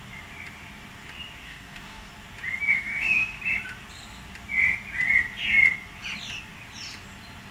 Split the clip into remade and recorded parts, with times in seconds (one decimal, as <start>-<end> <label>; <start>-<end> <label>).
0.0-1.4 recorded; 1.4-2.1 remade; 2.1-2.7 recorded; 2.7-3.4 remade; 3.4-7.5 recorded